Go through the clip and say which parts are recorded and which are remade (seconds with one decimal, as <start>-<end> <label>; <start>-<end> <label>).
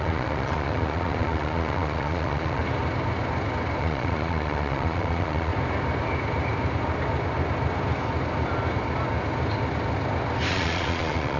0.0-2.6 remade; 2.6-3.8 recorded; 3.8-5.5 remade; 5.5-10.5 recorded; 10.5-11.4 remade